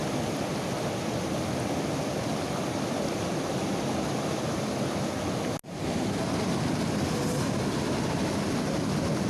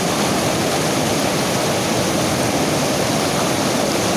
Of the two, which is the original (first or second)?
first